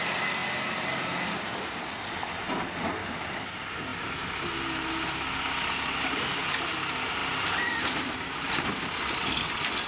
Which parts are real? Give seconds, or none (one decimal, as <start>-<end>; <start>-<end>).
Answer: 0.0-9.9